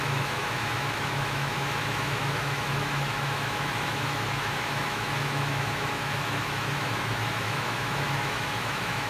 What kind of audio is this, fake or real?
fake